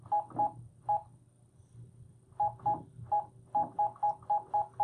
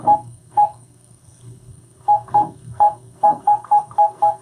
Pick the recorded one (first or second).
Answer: first